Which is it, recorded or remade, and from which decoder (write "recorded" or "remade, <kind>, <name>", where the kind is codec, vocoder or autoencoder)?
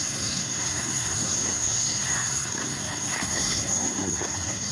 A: remade, codec, SNAC